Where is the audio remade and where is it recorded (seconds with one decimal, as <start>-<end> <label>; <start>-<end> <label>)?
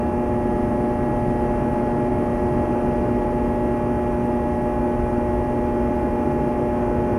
0.0-7.2 recorded